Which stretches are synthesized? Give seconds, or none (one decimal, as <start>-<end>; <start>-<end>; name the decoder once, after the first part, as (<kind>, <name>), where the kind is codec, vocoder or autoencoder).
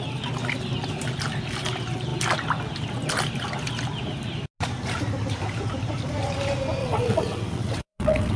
6.8-8.4 (vocoder, WaveNeXt)